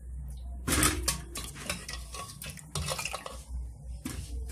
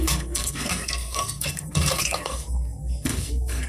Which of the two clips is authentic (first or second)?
first